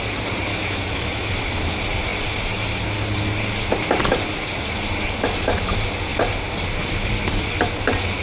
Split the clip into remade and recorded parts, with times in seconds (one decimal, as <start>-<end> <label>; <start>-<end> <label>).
0.0-0.5 recorded; 0.5-1.3 remade; 1.3-8.2 recorded